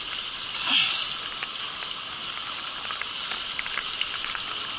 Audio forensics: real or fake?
real